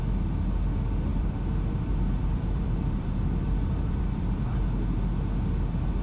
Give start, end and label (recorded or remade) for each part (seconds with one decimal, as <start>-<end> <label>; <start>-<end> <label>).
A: 0.0-1.1 recorded; 1.1-4.7 remade; 4.7-6.0 recorded